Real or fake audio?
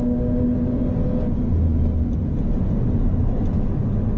real